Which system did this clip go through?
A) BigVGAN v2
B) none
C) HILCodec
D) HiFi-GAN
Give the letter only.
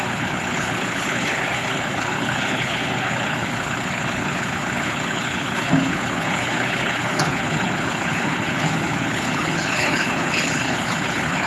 C